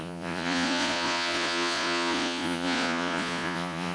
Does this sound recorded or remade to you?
remade